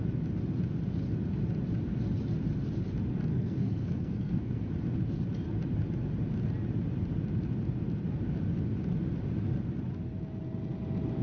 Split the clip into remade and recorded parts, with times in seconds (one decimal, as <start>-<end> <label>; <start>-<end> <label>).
0.0-3.3 recorded; 3.3-4.7 remade; 4.7-11.2 recorded

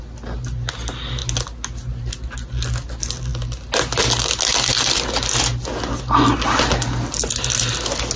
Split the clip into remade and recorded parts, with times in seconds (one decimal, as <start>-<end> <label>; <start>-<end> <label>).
0.0-8.2 recorded

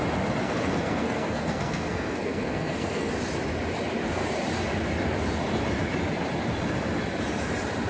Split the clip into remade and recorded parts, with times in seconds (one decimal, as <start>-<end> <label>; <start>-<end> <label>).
0.0-0.4 recorded; 0.4-3.1 remade; 3.1-7.9 recorded

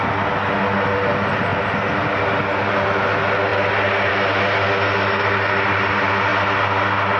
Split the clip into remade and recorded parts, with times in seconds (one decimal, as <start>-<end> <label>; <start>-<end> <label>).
0.0-7.2 recorded

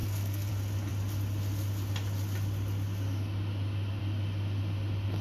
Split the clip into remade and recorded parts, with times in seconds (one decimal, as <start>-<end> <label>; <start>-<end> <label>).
0.0-0.5 remade; 0.5-5.2 recorded

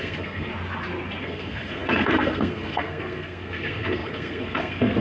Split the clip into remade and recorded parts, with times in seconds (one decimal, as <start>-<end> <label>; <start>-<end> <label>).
0.0-0.5 remade; 0.5-1.2 recorded; 1.2-5.0 remade